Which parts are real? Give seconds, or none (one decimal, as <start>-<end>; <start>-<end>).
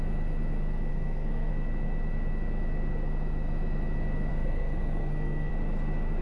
0.0-0.9; 1.5-4.3; 5.5-6.2